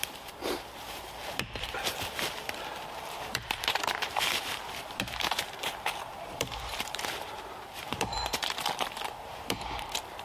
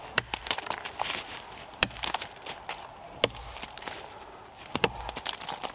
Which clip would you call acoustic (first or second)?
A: second